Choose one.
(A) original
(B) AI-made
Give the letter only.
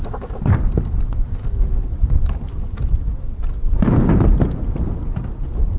A